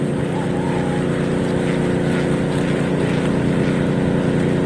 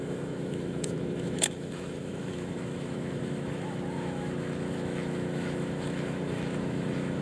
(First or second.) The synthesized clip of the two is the second